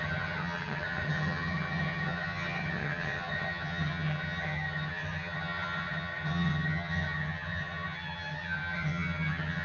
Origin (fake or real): fake